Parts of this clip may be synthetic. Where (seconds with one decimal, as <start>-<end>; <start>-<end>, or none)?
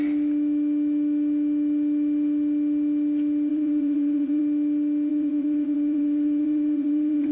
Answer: 3.5-4.4; 5.1-7.3